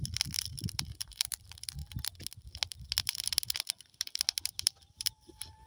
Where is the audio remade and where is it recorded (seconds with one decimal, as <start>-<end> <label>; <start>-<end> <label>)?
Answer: 0.0-1.8 remade; 1.8-4.6 recorded; 4.6-5.7 remade